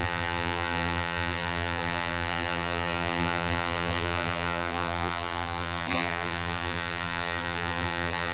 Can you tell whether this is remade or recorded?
remade